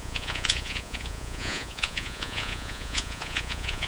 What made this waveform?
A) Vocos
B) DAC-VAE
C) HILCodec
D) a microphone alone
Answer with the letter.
A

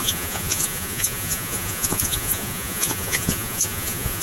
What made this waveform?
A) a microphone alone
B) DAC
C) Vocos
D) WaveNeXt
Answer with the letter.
C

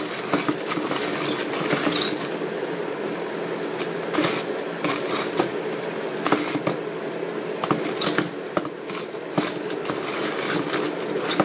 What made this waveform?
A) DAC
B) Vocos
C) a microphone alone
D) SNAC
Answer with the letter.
C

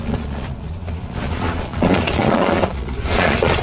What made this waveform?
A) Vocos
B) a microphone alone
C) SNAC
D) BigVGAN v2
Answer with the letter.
A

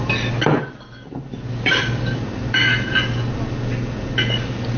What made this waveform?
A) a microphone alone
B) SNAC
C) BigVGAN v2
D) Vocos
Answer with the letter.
A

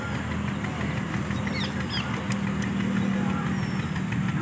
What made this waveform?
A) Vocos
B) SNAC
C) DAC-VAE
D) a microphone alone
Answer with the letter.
D